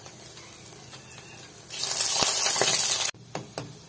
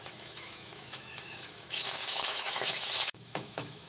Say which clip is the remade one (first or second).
second